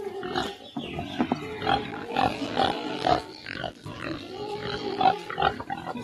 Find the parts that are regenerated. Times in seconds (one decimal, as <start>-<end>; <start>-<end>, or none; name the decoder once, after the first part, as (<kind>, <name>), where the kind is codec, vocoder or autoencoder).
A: 1.9-5.3 (vocoder, BigVGAN v2)